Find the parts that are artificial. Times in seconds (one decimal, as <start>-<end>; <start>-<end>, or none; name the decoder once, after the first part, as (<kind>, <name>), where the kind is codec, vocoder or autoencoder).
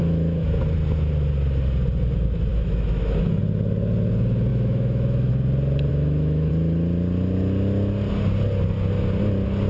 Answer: 0.0-0.6 (autoencoder, DAC-VAE); 2.5-3.4; 4.5-5.3; 5.9-6.5